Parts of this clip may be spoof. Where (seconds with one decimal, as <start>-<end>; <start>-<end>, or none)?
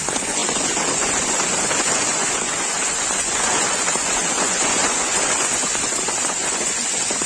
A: 0.0-7.3